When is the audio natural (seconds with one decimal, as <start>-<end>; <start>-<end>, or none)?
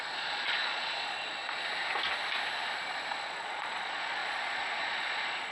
1.4-3.1